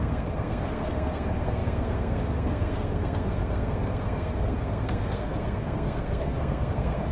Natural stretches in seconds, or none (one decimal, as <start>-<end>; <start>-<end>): none